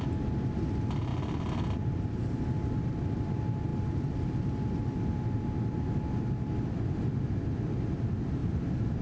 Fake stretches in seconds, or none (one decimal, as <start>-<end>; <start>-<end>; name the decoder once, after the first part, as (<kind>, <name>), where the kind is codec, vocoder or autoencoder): 1.1-2.9 (vocoder, BigVGAN v2); 8.4-9.0